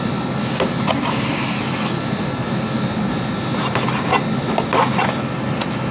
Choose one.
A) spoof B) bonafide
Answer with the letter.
B